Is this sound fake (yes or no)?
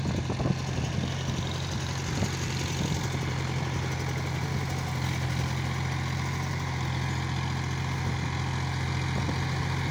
no